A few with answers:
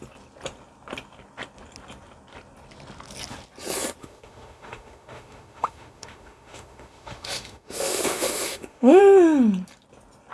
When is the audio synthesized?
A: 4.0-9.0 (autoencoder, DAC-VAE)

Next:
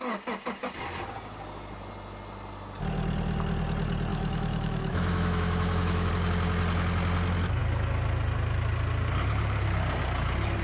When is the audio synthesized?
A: 4.1-6.1 (autoencoder, DAC-VAE)

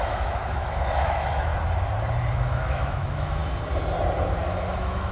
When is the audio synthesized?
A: 0.0-1.5 (autoencoder, DAC-VAE); 2.3-3.4; 4.5-5.1

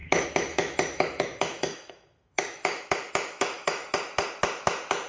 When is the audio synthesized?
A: 0.0-3.8 (autoencoder, DAC-VAE)

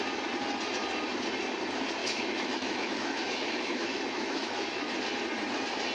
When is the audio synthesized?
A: 2.0-4.9 (autoencoder, DAC-VAE)

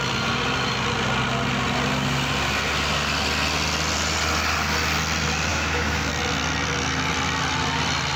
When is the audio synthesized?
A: 5.5-6.1 (autoencoder, DAC-VAE)

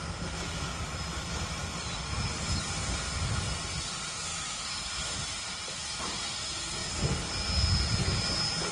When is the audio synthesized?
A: 4.3-4.8 (autoencoder, DAC-VAE)